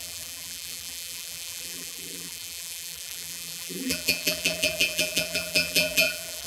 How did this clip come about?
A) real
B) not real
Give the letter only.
B